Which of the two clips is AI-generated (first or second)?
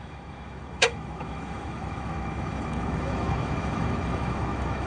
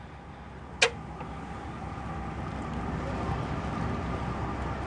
first